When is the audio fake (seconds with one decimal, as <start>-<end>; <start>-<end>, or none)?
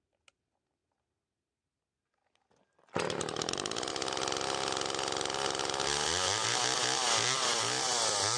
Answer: none